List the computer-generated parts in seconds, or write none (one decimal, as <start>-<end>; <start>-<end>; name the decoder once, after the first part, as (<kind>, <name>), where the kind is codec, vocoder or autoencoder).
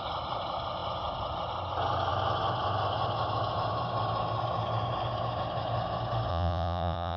6.3-7.2 (vocoder, Vocos)